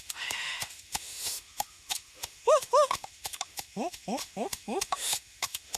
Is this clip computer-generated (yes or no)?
yes